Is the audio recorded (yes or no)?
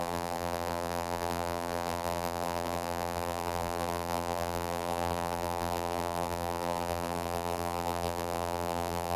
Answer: no